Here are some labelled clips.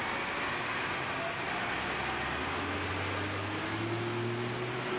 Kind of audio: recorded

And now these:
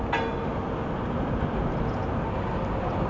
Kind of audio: recorded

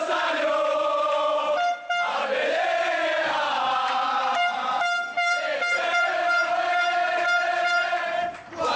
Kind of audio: remade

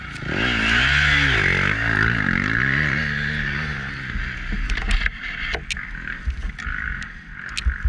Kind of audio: recorded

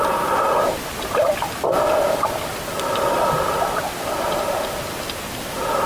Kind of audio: recorded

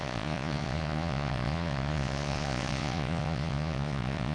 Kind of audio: remade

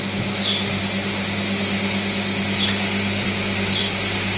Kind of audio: recorded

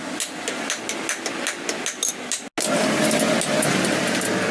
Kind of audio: recorded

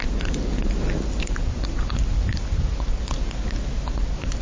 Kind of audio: recorded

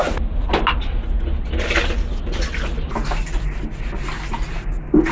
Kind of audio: recorded